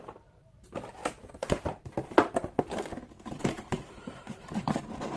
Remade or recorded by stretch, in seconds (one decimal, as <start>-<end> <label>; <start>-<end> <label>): 0.0-1.0 remade; 1.0-4.0 recorded; 4.0-5.2 remade